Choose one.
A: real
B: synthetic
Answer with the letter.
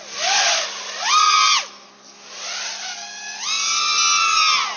A